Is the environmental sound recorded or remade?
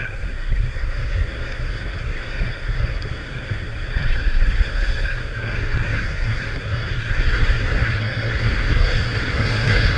remade